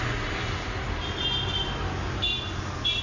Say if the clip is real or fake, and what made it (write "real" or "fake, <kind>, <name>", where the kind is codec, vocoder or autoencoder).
real